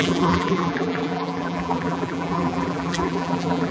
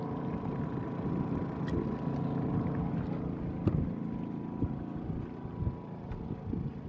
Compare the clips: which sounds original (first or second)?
second